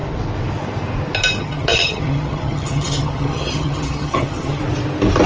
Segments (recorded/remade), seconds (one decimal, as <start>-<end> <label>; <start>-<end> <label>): 0.0-1.4 recorded; 1.4-4.6 remade; 4.6-5.3 recorded